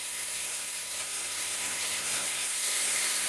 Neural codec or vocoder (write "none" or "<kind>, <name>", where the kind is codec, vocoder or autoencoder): codec, SNAC